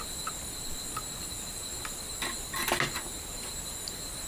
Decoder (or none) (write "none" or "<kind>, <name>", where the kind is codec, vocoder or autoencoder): none